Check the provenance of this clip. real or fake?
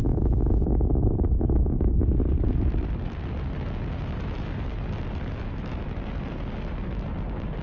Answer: real